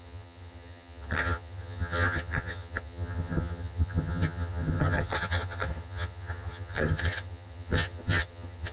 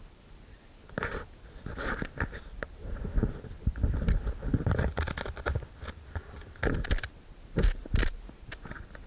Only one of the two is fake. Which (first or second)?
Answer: first